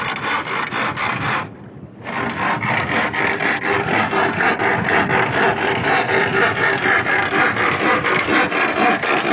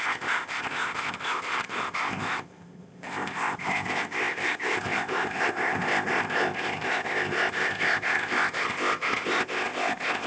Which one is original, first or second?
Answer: first